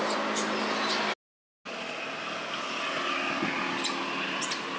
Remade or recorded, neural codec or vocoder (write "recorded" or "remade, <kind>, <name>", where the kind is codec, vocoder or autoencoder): recorded